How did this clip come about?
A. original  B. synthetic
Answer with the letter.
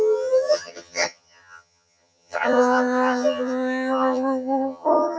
B